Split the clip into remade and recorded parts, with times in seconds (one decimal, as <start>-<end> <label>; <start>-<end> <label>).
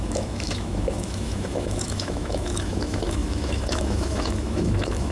0.0-5.1 remade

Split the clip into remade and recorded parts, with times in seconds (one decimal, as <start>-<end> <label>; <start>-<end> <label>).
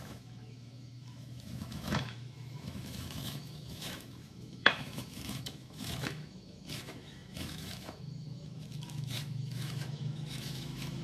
0.0-11.0 remade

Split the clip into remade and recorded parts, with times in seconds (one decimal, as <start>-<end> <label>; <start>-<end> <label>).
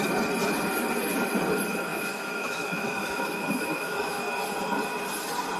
0.0-1.9 recorded; 1.9-4.2 remade; 4.2-5.6 recorded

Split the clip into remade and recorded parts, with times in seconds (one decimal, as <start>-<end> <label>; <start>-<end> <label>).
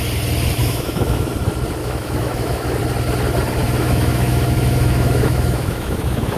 0.0-0.6 recorded; 0.6-1.3 remade; 1.3-1.8 recorded; 1.8-2.8 remade; 2.8-3.6 recorded; 3.6-6.4 remade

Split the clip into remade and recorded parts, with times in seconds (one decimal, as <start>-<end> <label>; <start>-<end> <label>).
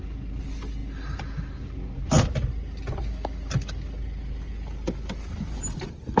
0.0-6.2 recorded